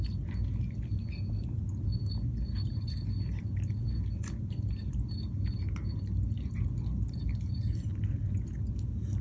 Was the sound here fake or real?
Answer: real